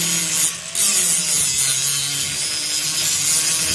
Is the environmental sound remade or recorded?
recorded